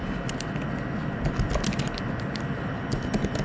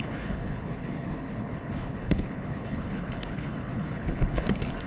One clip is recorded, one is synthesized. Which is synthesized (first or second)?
second